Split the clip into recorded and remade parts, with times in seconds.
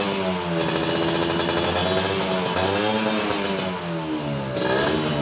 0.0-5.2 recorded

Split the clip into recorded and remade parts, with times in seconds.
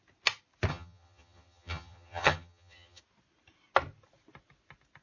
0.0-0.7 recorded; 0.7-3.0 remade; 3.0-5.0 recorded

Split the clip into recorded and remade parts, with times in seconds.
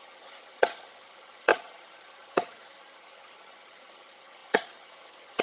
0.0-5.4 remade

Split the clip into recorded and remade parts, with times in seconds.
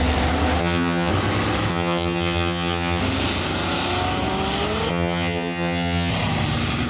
0.0-0.6 recorded; 0.6-1.1 remade; 1.1-1.7 recorded; 1.7-3.0 remade; 3.0-4.9 recorded; 4.9-6.1 remade; 6.1-6.9 recorded